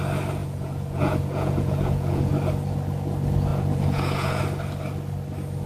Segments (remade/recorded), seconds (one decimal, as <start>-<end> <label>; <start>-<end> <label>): 0.0-0.4 recorded; 0.4-2.3 remade; 2.3-3.5 recorded; 3.5-4.4 remade; 4.4-5.7 recorded